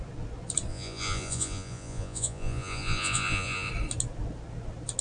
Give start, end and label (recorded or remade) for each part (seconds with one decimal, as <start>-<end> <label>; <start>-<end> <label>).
0.0-0.7 recorded; 0.7-3.7 remade; 3.7-5.0 recorded